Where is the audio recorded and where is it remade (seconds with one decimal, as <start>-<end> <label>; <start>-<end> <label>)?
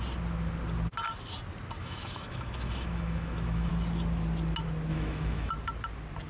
0.0-1.8 recorded; 1.8-3.7 remade; 3.7-4.9 recorded; 4.9-5.5 remade; 5.5-6.3 recorded